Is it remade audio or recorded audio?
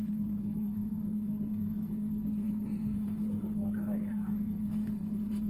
remade